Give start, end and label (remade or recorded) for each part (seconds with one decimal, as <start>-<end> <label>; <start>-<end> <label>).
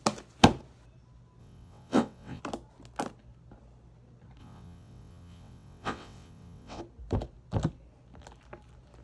0.0-1.4 recorded; 1.4-2.4 remade; 2.4-4.4 recorded; 4.4-6.8 remade; 6.8-9.0 recorded